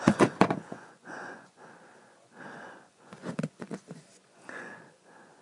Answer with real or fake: fake